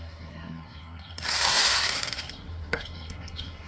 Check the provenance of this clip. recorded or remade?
remade